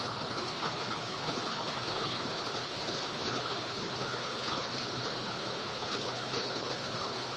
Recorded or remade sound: remade